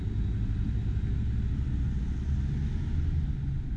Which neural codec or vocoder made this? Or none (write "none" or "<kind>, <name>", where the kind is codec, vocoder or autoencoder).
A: none